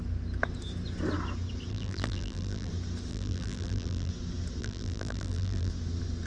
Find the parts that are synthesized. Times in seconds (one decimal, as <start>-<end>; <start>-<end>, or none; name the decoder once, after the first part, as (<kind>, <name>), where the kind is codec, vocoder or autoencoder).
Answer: 1.7-2.7 (vocoder, BigVGAN v2); 3.1-4.1; 4.6-5.7